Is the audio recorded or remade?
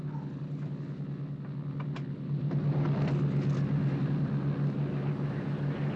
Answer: recorded